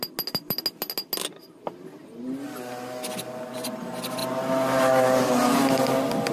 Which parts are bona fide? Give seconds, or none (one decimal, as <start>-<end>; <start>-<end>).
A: 0.0-6.3